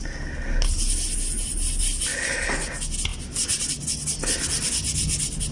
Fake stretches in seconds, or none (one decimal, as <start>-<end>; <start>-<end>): none